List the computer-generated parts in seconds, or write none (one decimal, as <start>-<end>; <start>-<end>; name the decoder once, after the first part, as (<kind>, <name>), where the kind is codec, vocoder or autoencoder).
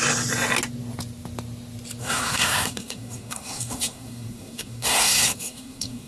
2.0-6.1 (codec, SNAC)